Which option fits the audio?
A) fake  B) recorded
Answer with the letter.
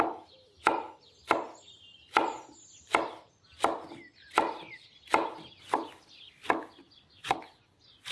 B